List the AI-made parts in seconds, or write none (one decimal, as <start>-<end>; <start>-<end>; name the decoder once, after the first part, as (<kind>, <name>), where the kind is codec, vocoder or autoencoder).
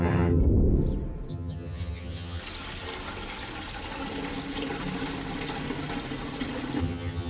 0.0-0.4 (vocoder, HiFi-GAN); 1.3-2.4; 6.8-7.3